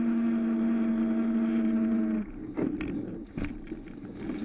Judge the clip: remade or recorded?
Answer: recorded